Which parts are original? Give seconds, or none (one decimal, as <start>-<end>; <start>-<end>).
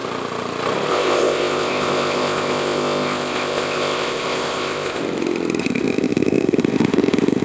0.0-0.9; 5.0-5.6